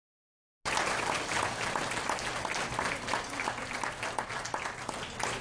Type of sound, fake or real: real